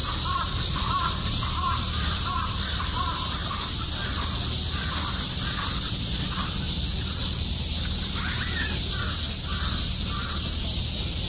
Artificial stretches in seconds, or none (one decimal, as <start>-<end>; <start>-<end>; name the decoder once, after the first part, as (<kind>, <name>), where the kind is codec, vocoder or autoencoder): 0.0-3.9 (vocoder, BigVGAN v2)